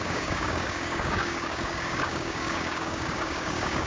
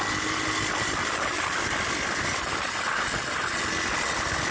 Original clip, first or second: second